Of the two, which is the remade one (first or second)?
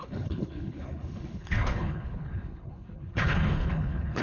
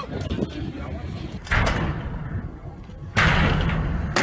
first